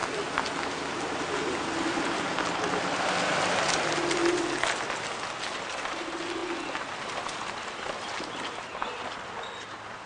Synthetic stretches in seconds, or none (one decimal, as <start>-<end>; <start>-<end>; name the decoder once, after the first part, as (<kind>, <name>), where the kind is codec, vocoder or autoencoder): none